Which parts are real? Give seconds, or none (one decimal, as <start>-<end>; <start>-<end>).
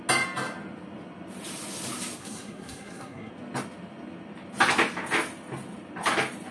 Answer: 0.0-2.2; 3.3-6.5